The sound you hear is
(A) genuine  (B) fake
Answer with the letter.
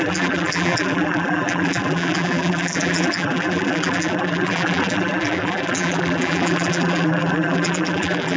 B